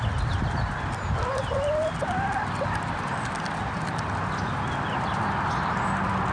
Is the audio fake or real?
real